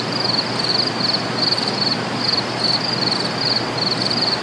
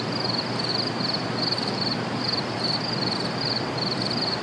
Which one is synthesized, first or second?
second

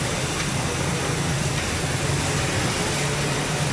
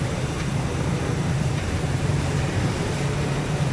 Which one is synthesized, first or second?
second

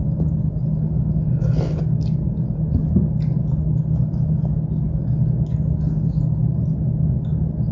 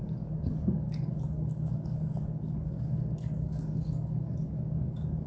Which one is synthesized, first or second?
second